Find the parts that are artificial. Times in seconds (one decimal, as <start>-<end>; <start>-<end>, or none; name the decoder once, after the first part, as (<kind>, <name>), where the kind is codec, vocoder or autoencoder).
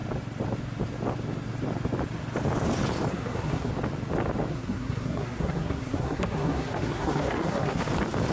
3.1-3.7 (codec, SNAC); 4.5-7.8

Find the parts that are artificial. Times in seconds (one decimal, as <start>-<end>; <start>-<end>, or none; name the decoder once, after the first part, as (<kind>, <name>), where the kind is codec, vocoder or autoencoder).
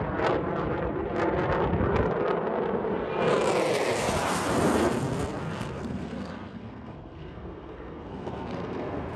5.4-9.2 (codec, SNAC)